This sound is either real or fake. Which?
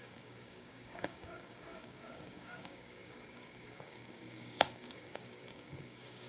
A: fake